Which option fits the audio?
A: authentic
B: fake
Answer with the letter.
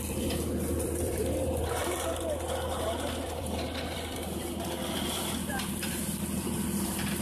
B